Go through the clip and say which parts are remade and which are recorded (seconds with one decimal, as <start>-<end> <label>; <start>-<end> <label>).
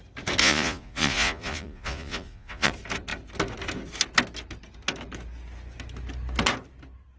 0.0-0.4 recorded; 0.4-2.7 remade; 2.7-7.2 recorded